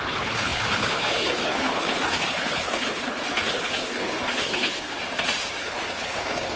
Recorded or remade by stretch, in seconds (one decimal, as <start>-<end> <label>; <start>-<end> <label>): 0.0-5.0 remade; 5.0-5.6 recorded; 5.6-6.6 remade